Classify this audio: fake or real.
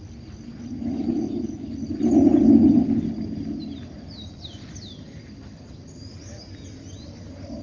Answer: real